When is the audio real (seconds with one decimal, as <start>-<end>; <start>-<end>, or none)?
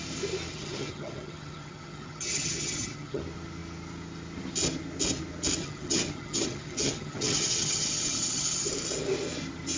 0.0-0.5; 3.2-5.6; 8.7-9.8